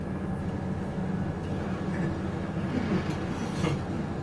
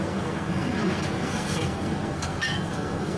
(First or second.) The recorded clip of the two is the first